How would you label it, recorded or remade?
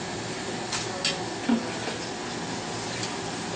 recorded